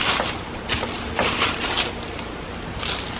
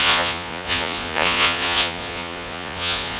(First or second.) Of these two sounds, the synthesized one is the second